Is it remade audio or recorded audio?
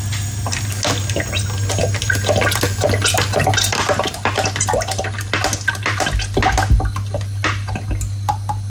recorded